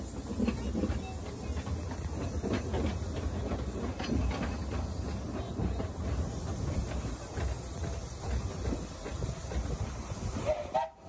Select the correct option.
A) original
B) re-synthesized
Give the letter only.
A